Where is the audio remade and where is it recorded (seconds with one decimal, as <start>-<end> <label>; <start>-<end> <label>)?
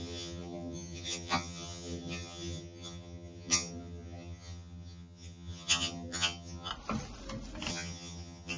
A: 0.0-6.7 remade; 6.7-7.7 recorded; 7.7-8.6 remade